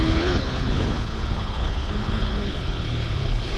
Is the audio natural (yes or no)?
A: no